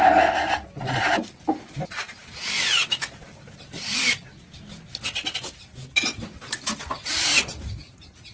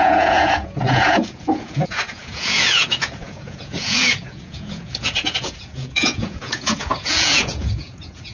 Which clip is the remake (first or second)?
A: second